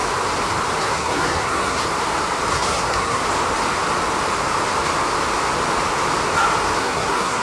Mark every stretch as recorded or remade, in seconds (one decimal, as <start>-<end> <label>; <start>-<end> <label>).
0.0-0.8 recorded; 0.8-1.8 remade; 1.8-2.5 recorded; 2.5-3.2 remade; 3.2-6.8 recorded; 6.8-7.4 remade